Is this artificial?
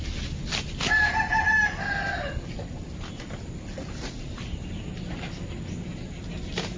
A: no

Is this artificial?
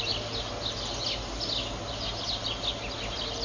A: no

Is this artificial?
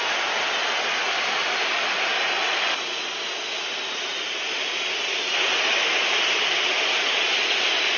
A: no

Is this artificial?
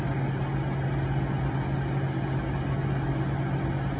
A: no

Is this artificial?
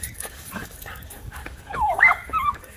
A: yes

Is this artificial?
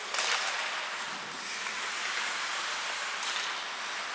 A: no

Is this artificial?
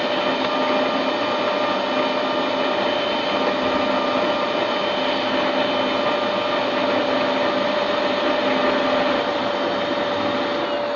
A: no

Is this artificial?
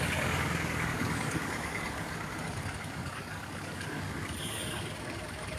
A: yes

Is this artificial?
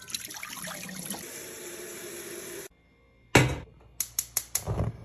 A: no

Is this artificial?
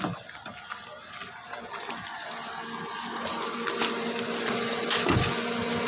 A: no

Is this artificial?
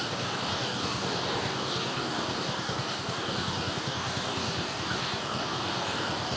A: yes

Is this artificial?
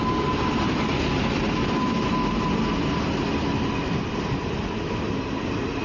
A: no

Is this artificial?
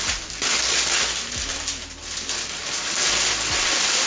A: no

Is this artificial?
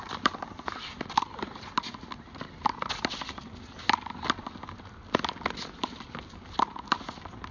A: no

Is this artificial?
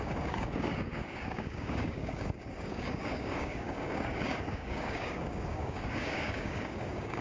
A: yes